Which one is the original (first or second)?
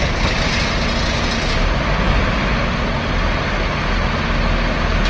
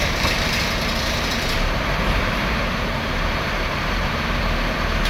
first